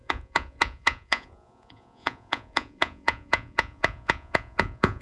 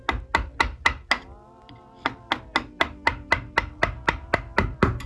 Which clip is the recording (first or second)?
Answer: second